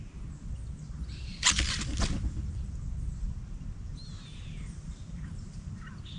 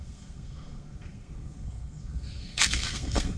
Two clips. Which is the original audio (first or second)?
first